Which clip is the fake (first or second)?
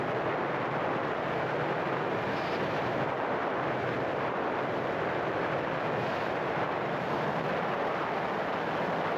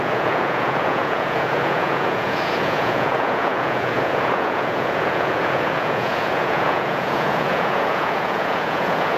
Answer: second